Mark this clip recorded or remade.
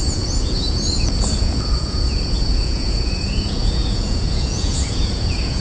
remade